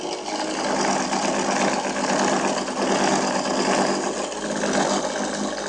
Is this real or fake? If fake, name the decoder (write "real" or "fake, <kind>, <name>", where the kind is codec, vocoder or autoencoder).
real